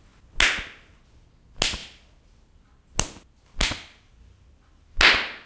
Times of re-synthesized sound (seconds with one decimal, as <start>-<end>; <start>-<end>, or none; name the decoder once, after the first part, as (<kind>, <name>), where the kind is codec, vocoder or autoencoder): none